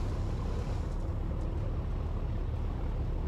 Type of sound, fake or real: real